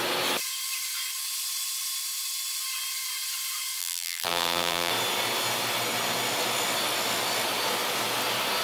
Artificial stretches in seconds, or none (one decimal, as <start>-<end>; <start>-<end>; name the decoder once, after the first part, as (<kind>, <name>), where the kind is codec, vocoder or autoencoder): 3.8-4.9 (vocoder, BigVGAN v2)

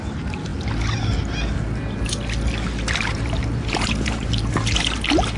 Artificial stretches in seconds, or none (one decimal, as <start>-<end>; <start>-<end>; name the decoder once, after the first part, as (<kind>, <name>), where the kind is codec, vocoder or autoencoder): 3.1-4.5 (vocoder, BigVGAN v2)

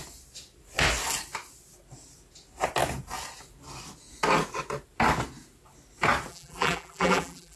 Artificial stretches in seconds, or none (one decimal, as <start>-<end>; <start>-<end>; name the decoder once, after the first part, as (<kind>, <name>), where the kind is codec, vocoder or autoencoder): 6.3-7.6 (vocoder, BigVGAN v2)

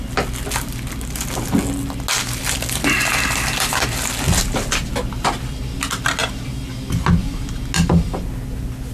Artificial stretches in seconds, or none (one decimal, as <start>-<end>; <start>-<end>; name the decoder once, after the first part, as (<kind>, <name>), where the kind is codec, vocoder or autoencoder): none

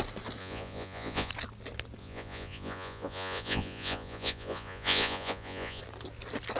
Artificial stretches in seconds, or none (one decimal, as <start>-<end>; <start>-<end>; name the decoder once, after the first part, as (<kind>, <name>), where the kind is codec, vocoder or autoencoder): 0.4-1.3 (vocoder, Vocos); 2.0-5.8

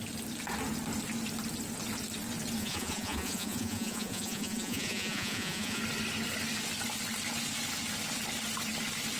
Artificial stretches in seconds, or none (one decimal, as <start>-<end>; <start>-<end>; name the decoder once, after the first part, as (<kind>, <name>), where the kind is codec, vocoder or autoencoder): 2.6-5.8 (vocoder, Vocos)

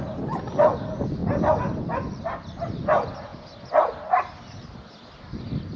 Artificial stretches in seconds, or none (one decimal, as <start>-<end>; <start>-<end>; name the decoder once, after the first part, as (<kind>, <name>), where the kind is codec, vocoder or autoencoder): none